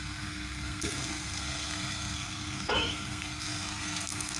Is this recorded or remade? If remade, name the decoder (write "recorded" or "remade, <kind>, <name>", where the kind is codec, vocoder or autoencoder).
remade, codec, SNAC